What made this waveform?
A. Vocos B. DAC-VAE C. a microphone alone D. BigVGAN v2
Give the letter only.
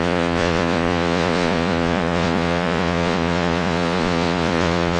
A